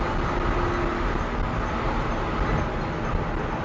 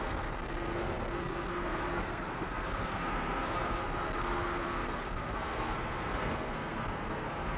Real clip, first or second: first